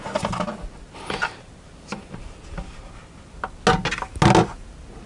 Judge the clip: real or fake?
real